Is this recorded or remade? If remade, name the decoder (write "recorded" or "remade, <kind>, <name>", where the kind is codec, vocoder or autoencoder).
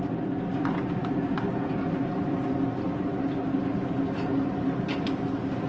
recorded